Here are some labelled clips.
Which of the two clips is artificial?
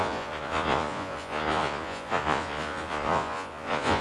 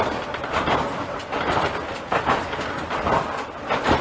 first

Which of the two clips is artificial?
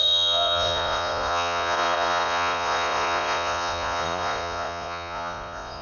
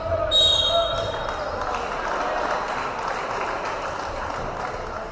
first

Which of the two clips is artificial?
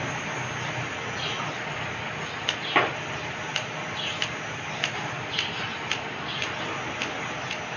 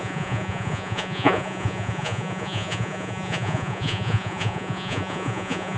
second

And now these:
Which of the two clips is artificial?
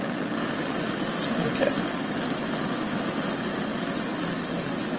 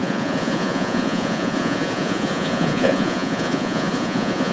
second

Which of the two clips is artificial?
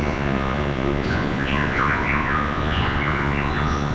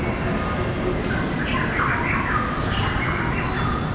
first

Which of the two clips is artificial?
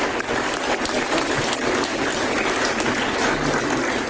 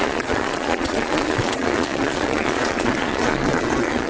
second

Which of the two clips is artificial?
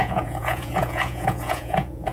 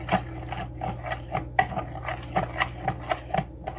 first